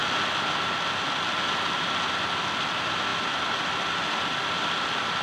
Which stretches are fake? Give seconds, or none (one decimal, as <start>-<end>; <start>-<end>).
none